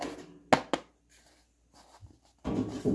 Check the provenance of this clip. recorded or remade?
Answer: recorded